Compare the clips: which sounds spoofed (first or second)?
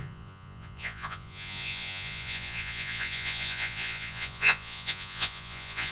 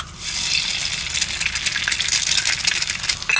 first